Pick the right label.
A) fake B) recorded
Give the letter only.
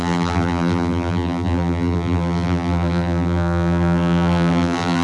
A